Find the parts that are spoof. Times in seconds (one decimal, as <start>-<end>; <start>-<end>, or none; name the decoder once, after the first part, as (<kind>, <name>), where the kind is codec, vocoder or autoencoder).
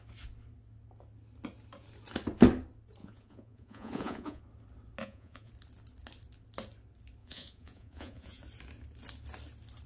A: 3.0-4.4 (vocoder, Vocos); 5.0-5.5; 7.2-8.4